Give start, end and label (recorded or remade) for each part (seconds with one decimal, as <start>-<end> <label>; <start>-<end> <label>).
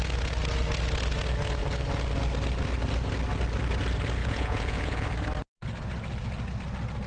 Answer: 0.0-4.2 recorded; 4.2-5.1 remade; 5.1-7.1 recorded